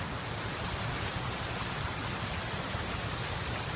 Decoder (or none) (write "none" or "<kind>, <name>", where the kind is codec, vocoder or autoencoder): none